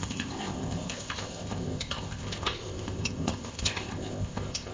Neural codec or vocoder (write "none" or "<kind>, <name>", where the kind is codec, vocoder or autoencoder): codec, ZipCodec